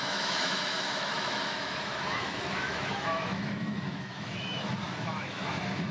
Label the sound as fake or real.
fake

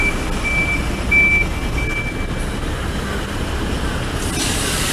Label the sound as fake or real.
real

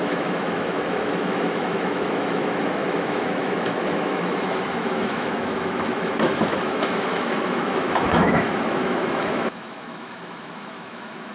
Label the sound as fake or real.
fake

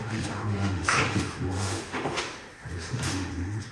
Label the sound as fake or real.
fake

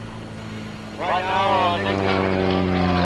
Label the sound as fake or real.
real